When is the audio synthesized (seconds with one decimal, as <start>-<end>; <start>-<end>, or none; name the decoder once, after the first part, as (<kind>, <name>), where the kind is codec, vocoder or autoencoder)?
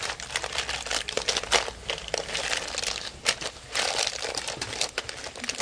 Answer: none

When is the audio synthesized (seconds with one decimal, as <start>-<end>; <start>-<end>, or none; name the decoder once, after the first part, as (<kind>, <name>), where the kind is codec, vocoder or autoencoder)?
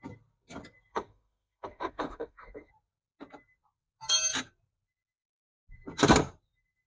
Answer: 0.9-2.7 (autoencoder, DAC-VAE)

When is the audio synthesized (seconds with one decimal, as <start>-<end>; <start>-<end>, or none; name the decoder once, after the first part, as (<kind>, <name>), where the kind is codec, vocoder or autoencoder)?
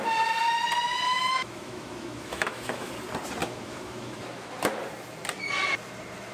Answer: 1.1-2.9 (autoencoder, DAC-VAE); 3.4-4.5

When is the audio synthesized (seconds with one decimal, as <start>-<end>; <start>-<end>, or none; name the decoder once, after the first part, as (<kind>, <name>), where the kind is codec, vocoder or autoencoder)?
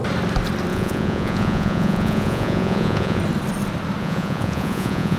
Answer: 0.7-3.2 (vocoder, Vocos); 4.0-5.2